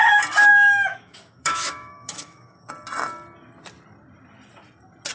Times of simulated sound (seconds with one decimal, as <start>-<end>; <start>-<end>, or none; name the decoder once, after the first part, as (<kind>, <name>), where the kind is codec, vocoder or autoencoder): 0.5-2.7 (autoencoder, DAC-VAE)